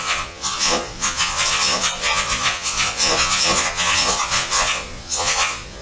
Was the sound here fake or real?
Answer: fake